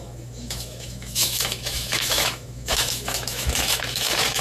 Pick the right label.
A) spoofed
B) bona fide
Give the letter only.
A